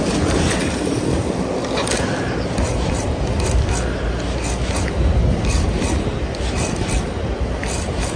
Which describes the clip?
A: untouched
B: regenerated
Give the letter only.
A